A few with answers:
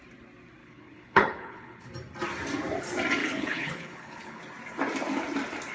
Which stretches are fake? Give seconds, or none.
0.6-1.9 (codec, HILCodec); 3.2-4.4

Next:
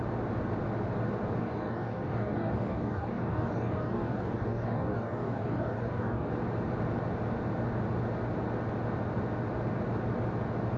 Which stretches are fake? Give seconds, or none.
1.4-6.3 (codec, DAC)

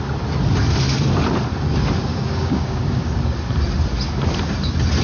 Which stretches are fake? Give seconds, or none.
2.1-3.0 (codec, DAC)

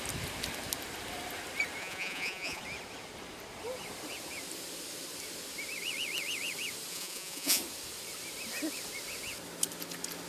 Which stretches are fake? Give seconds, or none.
1.8-2.6 (vocoder, Vocos); 6.9-7.6

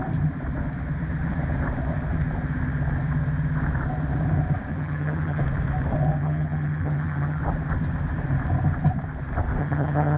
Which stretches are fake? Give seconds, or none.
4.7-5.4 (vocoder, HiFi-GAN); 6.2-7.4; 9.6-10.2

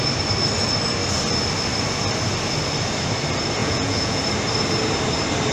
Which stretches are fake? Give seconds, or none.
3.6-4.2 (vocoder, Vocos)

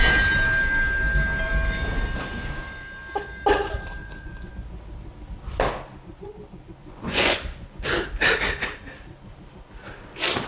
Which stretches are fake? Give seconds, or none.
4.0-4.5 (vocoder, Vocos); 6.8-7.9

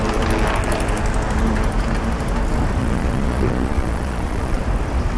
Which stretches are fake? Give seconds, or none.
2.8-4.6 (vocoder, Vocos)